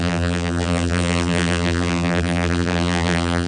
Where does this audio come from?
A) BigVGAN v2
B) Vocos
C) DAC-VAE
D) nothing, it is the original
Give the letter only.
A